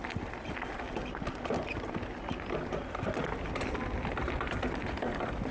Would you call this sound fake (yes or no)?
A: no